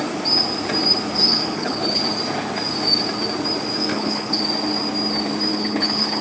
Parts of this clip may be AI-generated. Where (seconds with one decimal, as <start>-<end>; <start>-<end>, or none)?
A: 1.3-2.0; 3.9-4.4; 5.5-6.2